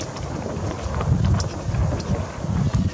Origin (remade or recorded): recorded